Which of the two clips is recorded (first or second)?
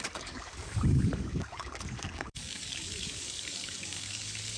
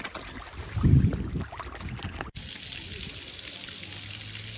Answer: second